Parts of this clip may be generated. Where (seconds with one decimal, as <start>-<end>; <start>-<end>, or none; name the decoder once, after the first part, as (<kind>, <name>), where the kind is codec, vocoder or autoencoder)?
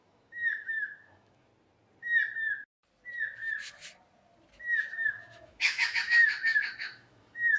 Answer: 0.0-1.5 (autoencoder, DAC-VAE); 5.1-7.6